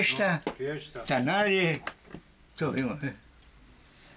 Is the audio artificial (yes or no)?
no